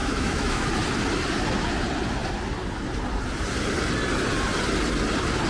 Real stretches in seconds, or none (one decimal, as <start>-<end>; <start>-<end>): 0.7-5.5